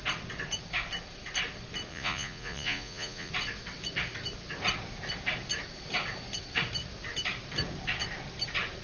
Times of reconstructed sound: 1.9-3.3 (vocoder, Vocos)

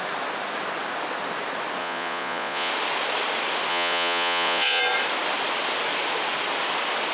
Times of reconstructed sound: 1.8-2.7 (vocoder, Vocos); 3.7-4.8

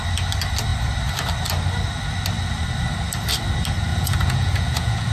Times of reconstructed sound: 3.9-5.1 (vocoder, Vocos)

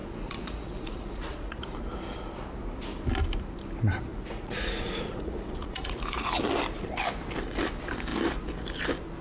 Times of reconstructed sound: 0.0-1.6 (vocoder, Vocos); 4.1-6.4

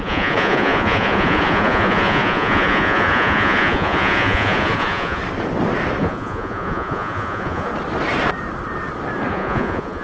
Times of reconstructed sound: 0.0-5.2 (vocoder, Vocos); 6.0-7.7; 9.3-10.0

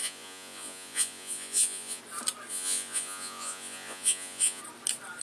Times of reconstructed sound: 0.0-2.0 (vocoder, Vocos); 2.5-4.6

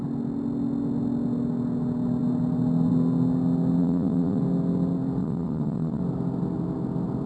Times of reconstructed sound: 3.8-4.4 (vocoder, Vocos); 5.2-6.0